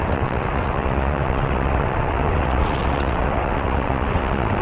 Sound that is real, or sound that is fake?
fake